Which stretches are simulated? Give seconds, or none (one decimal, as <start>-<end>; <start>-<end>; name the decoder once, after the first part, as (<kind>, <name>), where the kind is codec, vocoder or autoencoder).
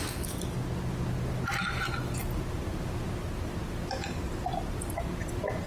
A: none